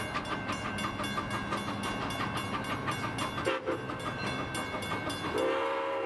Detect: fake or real real